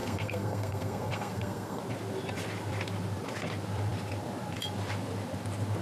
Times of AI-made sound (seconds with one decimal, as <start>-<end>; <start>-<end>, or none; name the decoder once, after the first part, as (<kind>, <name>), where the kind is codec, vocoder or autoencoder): 0.0-1.8 (codec, SNAC)